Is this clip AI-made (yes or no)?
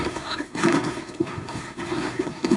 yes